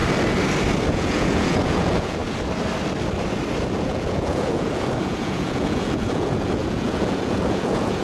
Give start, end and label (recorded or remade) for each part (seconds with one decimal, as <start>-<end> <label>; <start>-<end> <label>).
0.0-0.9 recorded; 0.9-2.2 remade; 2.2-3.8 recorded; 3.8-8.0 remade